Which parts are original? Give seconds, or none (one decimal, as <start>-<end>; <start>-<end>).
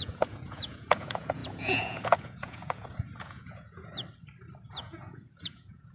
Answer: 3.9-4.8